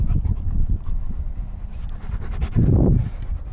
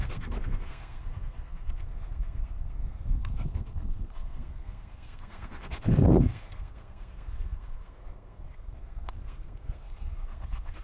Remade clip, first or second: second